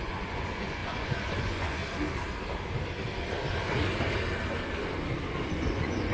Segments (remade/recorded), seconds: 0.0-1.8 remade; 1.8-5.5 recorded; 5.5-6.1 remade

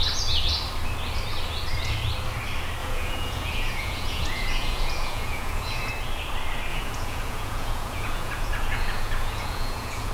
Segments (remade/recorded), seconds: 0.0-2.8 recorded; 2.8-5.9 remade; 5.9-6.7 recorded; 6.7-10.1 remade

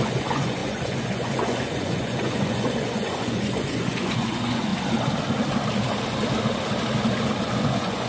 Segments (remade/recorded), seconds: 0.0-4.7 remade; 4.7-7.4 recorded; 7.4-8.1 remade

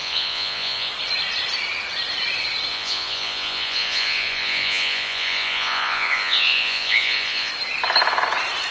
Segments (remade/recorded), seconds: 0.0-0.9 remade; 0.9-2.7 recorded; 2.7-7.5 remade; 7.5-8.7 recorded

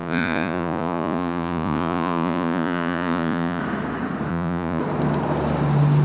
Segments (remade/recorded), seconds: 0.0-3.6 remade; 3.6-4.3 recorded; 4.3-4.8 remade; 4.8-6.0 recorded